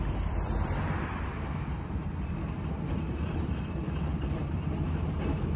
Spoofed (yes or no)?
yes